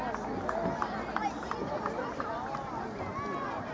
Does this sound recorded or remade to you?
recorded